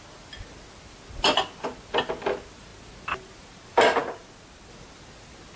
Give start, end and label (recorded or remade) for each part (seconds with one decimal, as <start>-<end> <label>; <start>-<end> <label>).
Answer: 0.0-5.6 recorded